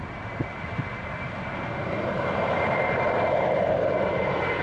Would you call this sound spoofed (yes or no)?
yes